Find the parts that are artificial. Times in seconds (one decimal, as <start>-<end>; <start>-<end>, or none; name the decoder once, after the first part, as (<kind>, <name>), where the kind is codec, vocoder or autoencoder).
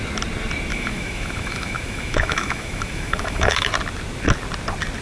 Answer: 0.7-3.7 (autoencoder, DAC-VAE)